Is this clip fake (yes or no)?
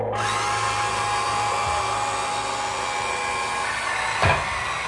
no